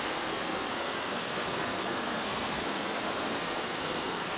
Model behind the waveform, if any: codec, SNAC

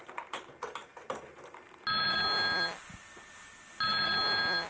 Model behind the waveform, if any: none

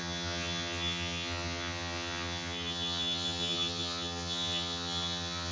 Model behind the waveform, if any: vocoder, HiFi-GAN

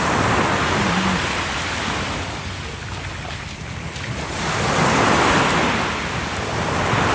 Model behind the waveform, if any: none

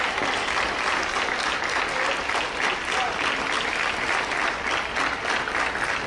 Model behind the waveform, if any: none